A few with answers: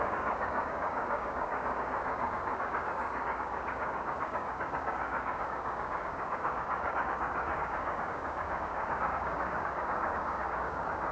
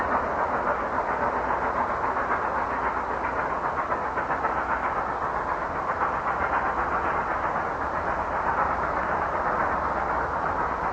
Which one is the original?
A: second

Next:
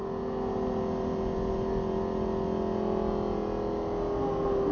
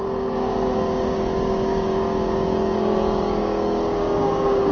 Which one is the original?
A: first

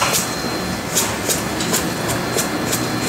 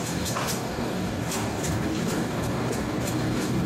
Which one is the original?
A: first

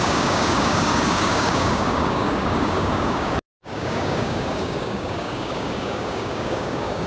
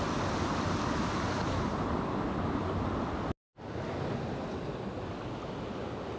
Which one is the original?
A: second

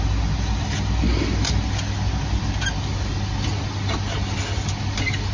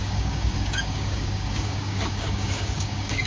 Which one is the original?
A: first